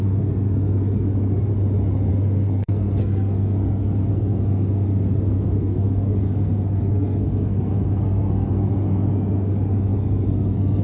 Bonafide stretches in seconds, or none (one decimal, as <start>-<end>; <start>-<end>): 1.5-2.1